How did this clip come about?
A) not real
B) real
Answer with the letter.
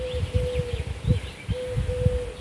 B